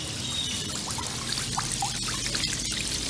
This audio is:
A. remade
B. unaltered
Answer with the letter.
B